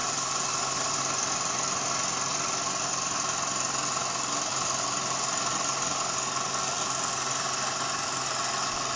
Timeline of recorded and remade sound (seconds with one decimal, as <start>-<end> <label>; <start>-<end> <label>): 0.0-1.0 remade; 1.0-9.0 recorded